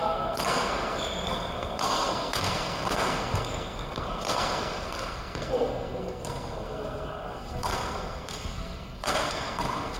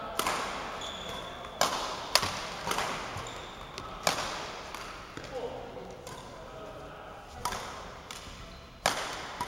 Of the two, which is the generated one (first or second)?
first